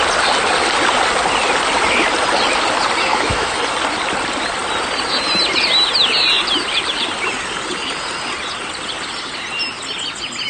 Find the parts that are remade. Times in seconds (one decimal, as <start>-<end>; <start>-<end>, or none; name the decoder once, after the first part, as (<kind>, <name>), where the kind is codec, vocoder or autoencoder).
3.1-3.6 (autoencoder, DAC-VAE)